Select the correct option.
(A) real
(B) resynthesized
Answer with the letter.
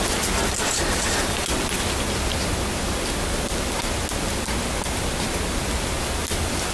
A